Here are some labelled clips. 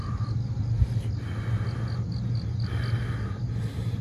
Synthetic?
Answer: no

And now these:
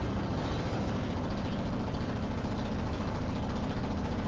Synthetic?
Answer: no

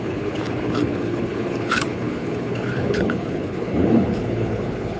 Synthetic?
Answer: yes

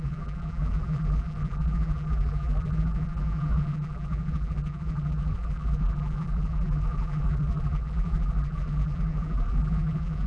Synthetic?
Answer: yes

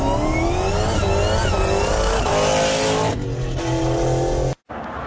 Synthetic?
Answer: no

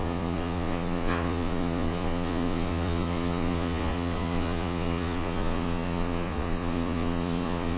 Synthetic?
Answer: yes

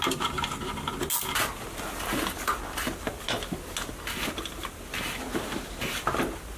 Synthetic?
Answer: no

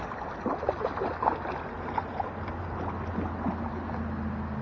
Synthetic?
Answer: no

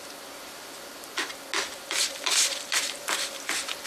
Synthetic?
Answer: no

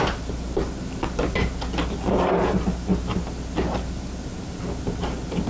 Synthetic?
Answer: no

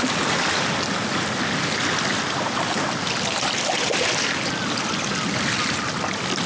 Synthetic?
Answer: no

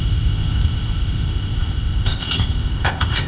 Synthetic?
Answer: yes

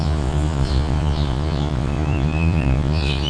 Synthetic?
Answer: yes